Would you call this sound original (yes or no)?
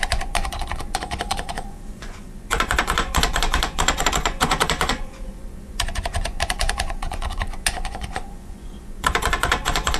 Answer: no